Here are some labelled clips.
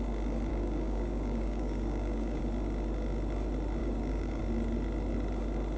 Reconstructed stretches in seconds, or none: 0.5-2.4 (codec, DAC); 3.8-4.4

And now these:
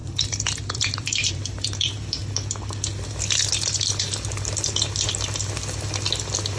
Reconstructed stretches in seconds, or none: 0.0-2.2 (vocoder, BigVGAN v2)

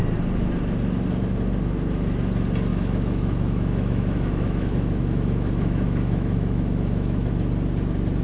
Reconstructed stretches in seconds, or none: 2.7-7.3 (autoencoder, DAC-VAE)

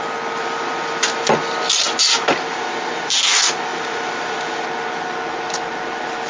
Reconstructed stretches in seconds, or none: 2.5-3.0 (vocoder, BigVGAN v2); 3.7-4.6

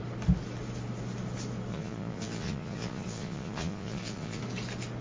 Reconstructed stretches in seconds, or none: 1.7-4.4 (vocoder, Vocos)